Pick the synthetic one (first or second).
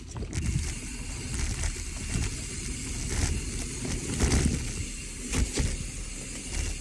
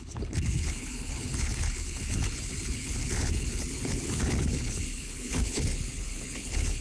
second